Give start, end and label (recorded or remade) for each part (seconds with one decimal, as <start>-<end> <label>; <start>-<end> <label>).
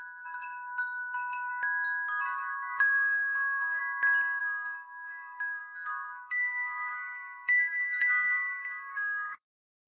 0.0-1.5 remade; 1.5-2.2 recorded; 2.2-3.8 remade; 3.8-4.4 recorded; 4.4-9.9 remade